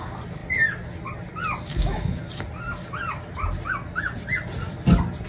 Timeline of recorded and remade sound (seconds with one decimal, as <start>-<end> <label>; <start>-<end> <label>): 0.0-1.7 recorded; 1.7-2.2 remade; 2.2-5.3 recorded